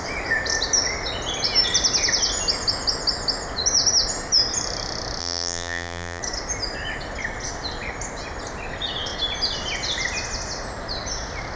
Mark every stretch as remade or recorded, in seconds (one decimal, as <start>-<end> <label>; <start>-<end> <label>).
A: 0.0-5.2 recorded; 5.2-6.2 remade; 6.2-11.6 recorded